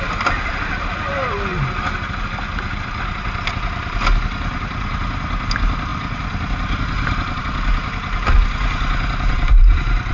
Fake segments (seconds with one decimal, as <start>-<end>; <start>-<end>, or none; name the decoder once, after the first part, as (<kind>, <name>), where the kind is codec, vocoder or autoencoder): none